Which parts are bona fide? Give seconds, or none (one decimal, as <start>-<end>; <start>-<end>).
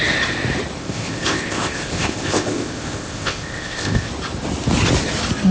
0.0-0.8; 4.1-5.5